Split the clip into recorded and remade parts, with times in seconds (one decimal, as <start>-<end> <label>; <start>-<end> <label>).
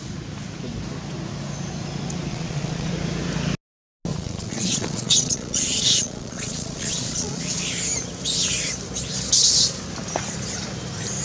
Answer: 0.0-2.3 recorded; 2.3-2.9 remade; 2.9-4.1 recorded; 4.1-7.6 remade; 7.6-11.2 recorded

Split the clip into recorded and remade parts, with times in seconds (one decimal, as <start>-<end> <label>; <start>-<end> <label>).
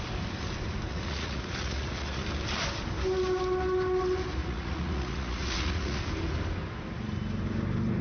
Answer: 0.0-0.9 recorded; 0.9-2.2 remade; 2.2-4.4 recorded; 4.4-6.1 remade; 6.1-8.0 recorded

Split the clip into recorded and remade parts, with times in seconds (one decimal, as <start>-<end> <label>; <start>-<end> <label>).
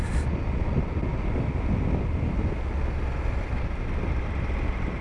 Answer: 0.0-5.0 recorded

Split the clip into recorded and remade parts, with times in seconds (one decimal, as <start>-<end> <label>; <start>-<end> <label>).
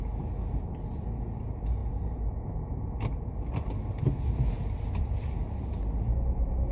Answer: 0.0-6.7 recorded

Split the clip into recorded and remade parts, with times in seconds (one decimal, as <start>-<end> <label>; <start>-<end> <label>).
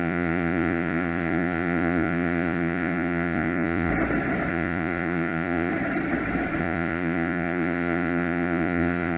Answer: 0.0-3.9 remade; 3.9-4.5 recorded; 4.5-5.7 remade; 5.7-6.6 recorded; 6.6-9.2 remade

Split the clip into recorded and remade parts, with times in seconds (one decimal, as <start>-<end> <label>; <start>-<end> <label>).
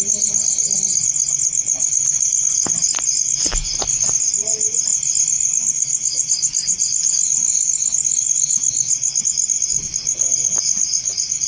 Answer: 0.0-11.5 recorded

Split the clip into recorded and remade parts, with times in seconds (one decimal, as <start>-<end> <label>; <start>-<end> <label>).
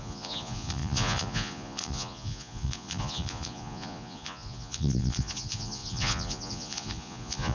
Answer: 0.0-7.5 remade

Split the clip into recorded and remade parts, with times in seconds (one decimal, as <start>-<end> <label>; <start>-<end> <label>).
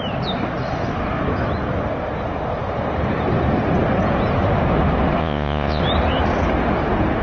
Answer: 0.0-5.2 recorded; 5.2-5.8 remade; 5.8-7.2 recorded